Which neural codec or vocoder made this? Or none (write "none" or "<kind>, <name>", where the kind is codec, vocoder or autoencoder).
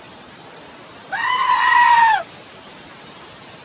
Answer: vocoder, BigVGAN v2